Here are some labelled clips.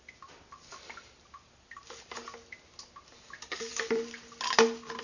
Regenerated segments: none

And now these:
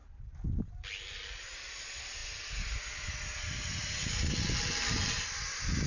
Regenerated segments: none

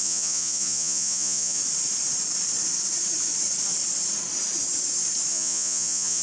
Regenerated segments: 0.0-1.6; 5.3-6.2

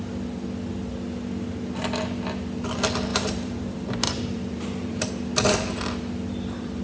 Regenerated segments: 3.1-5.1